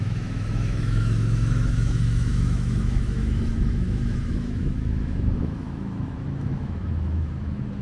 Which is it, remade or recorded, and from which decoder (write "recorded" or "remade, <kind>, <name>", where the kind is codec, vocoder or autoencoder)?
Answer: remade, autoencoder, DAC-VAE